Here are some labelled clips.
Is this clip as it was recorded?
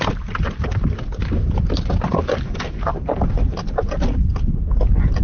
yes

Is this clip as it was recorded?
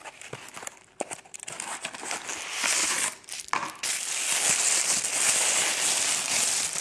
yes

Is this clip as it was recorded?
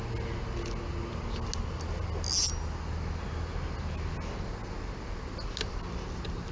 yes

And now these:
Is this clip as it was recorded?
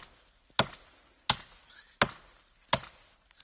yes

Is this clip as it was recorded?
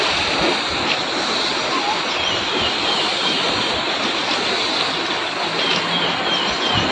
yes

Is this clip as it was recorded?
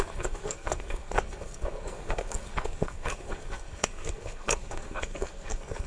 no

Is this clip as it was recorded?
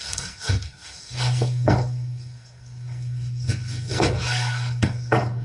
no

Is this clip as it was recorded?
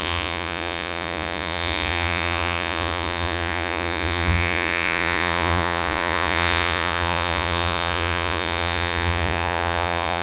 no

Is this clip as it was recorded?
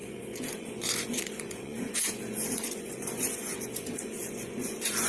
no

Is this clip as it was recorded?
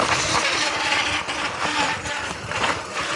yes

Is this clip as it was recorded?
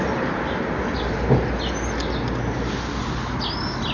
yes